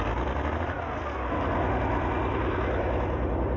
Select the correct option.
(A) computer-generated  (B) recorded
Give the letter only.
A